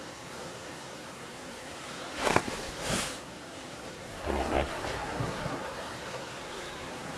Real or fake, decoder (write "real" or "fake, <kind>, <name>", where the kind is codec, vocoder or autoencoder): fake, codec, SNAC